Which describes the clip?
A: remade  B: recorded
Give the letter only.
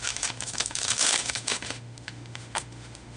A